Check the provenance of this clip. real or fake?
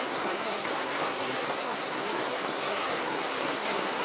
fake